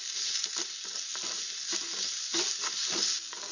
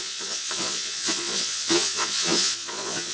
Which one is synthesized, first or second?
second